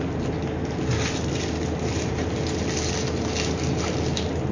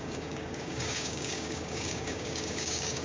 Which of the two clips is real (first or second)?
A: first